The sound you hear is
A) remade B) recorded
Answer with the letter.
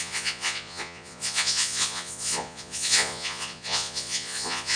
A